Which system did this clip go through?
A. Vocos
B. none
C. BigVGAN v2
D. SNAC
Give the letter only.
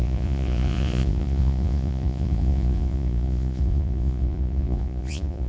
A